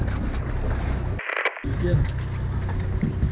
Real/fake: real